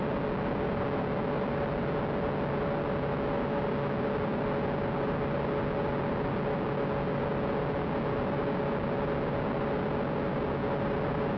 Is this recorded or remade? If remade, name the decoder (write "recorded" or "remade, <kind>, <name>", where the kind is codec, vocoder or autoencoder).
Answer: recorded